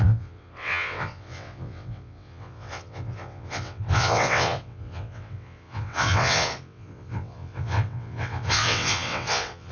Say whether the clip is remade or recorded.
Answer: remade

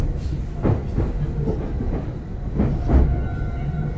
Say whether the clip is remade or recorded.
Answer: recorded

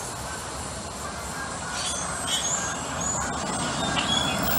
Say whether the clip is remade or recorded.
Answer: recorded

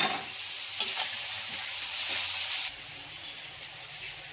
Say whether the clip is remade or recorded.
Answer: recorded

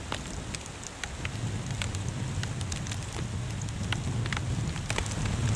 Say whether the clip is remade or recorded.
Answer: recorded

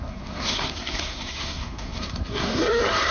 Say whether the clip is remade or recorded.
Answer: remade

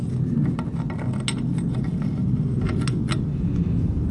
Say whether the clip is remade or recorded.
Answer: recorded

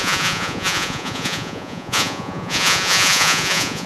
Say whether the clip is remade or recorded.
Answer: remade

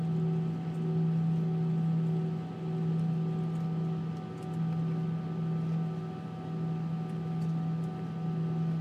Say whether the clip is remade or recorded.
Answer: recorded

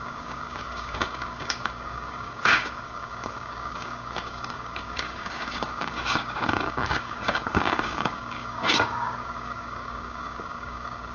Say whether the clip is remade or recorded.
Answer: remade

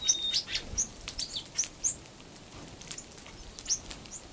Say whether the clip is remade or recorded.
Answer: recorded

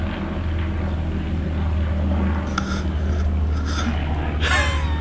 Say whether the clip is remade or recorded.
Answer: recorded